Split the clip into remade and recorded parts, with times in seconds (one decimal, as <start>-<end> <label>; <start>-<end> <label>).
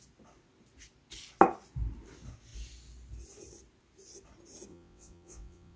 0.0-4.7 recorded; 4.7-5.8 remade